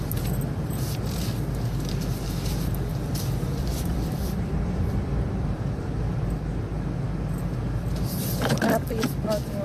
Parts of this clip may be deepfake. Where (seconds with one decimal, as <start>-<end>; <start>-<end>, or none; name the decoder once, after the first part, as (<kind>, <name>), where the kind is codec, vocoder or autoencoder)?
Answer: 2.9-6.4 (vocoder, BigVGAN v2)